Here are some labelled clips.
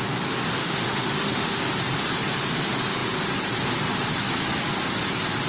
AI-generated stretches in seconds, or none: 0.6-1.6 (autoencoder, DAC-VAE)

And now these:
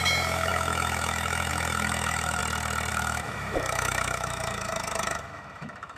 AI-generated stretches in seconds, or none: 0.0-2.4 (autoencoder, DAC-VAE); 2.9-6.0

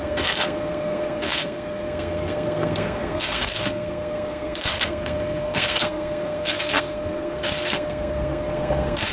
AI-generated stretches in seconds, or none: 0.0-9.1 (codec, SNAC)

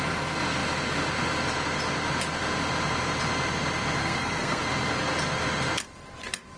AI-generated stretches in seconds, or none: 4.0-4.6 (codec, SNAC)

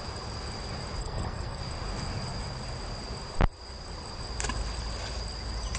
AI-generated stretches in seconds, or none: 1.0-1.6 (codec, SNAC)

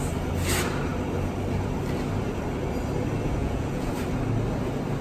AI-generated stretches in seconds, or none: 3.4-3.9 (vocoder, Vocos)

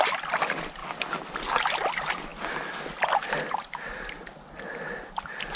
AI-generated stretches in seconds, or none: none